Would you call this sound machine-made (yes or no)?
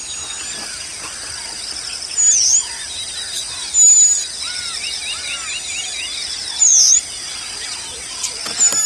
no